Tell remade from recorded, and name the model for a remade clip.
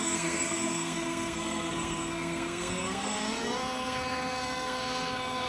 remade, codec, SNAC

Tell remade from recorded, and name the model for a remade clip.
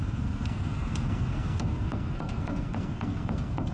remade, codec, SNAC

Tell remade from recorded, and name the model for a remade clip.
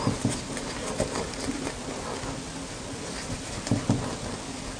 recorded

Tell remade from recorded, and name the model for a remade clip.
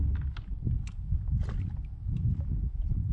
recorded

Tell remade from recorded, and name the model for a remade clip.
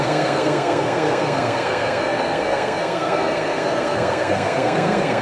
remade, codec, SNAC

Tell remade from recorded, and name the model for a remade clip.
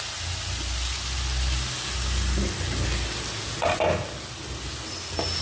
recorded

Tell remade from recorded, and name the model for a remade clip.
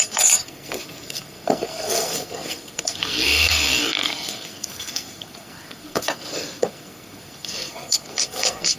remade, codec, SNAC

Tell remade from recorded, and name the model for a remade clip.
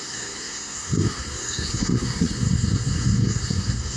remade, codec, SNAC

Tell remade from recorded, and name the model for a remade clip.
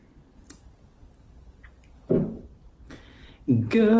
recorded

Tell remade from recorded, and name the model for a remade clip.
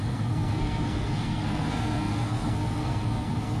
remade, codec, SNAC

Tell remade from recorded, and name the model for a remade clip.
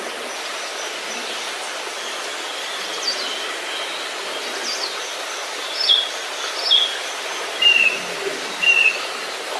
recorded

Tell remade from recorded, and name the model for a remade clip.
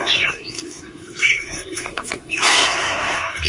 remade, codec, SNAC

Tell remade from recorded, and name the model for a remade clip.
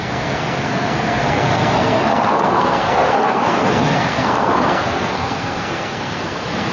remade, codec, SNAC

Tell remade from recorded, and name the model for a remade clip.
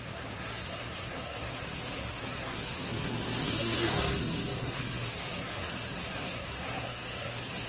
remade, codec, SNAC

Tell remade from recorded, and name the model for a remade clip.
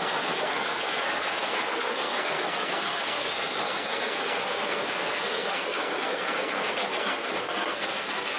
remade, codec, SNAC